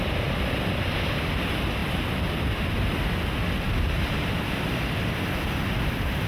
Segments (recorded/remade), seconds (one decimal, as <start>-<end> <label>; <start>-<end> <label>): 0.0-6.3 recorded